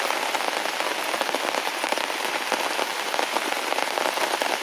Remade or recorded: remade